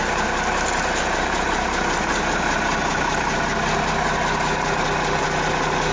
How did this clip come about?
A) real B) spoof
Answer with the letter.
A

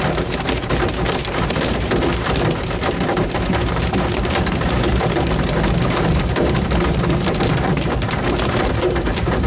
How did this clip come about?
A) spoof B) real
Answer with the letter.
A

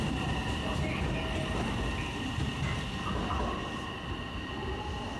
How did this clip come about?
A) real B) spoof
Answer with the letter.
A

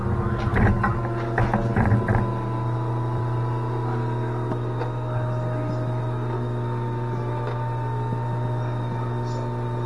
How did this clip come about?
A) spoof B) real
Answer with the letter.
B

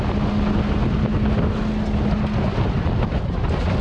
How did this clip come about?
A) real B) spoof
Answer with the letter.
A